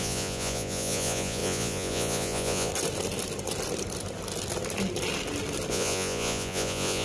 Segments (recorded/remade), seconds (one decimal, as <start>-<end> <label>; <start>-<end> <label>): 0.0-2.7 remade; 2.7-5.7 recorded; 5.7-7.0 remade